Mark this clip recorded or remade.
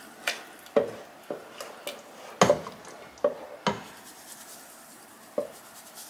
recorded